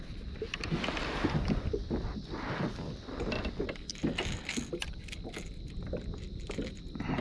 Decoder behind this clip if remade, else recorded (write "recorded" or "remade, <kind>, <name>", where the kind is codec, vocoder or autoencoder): recorded